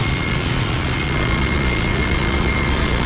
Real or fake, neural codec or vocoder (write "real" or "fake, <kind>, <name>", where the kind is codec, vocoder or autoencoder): fake, vocoder, Vocos